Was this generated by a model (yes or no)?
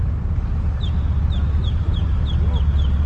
no